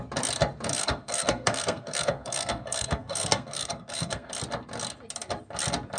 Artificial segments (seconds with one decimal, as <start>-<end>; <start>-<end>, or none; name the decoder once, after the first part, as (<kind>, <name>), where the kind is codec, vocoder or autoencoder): 0.7-4.3 (codec, SNAC)